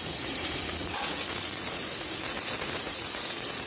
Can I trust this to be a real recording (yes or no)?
no